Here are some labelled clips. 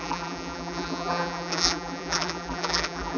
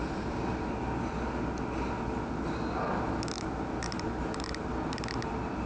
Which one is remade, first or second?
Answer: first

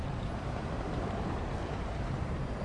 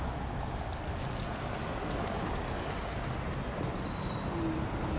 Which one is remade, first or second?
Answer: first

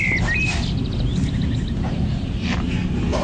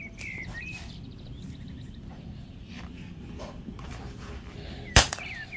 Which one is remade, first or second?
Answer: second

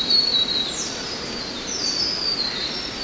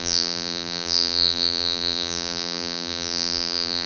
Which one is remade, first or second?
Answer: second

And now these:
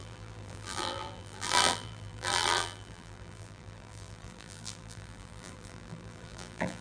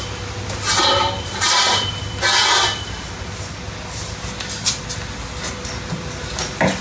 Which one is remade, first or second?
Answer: first